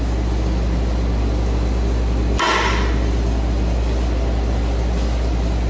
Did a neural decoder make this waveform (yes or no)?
no